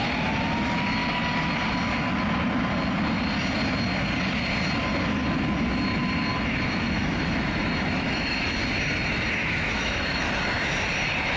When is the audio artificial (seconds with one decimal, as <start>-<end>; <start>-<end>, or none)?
6.3-8.6; 9.4-10.3

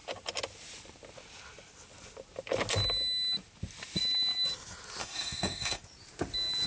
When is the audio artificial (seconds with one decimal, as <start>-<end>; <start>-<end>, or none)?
5.0-5.8

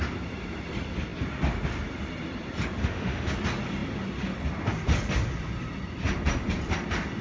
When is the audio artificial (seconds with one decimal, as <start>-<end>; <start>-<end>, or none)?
2.8-3.3

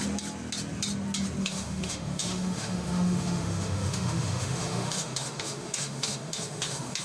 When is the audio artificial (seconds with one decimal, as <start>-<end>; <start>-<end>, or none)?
1.4-7.0